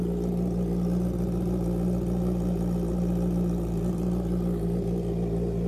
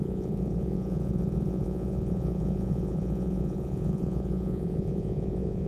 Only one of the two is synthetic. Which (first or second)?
second